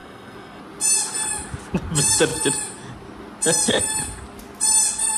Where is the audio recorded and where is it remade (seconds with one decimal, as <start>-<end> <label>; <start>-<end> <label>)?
0.0-0.6 remade; 0.6-5.2 recorded